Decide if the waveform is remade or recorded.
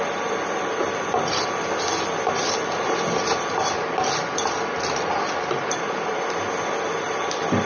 remade